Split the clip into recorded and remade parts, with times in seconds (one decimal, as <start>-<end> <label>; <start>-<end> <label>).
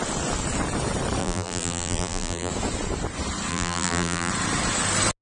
0.0-1.2 recorded; 1.2-2.5 remade; 2.5-3.5 recorded; 3.5-4.3 remade; 4.3-5.2 recorded